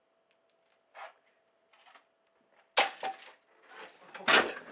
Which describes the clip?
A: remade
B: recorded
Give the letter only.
B